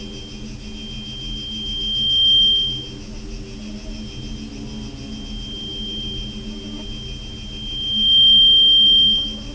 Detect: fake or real real